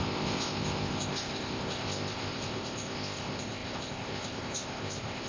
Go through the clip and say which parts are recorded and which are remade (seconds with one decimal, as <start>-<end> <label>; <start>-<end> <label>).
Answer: 0.0-5.3 remade